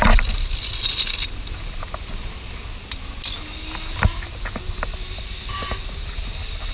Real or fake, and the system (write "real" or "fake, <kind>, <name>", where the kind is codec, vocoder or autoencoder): real